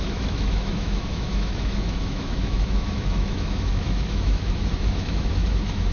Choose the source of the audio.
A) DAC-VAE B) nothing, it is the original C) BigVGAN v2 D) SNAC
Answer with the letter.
A